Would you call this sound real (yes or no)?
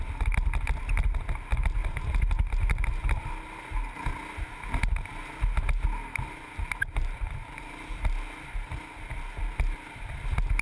yes